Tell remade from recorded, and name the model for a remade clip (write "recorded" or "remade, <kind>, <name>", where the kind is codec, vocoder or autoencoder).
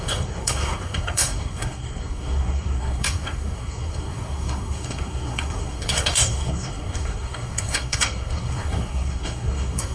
remade, codec, SNAC